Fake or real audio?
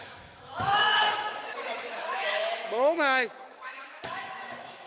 fake